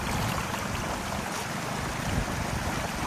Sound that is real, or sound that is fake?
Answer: real